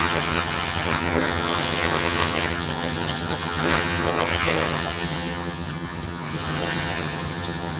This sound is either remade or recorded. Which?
remade